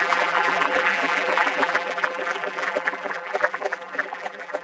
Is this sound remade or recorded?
remade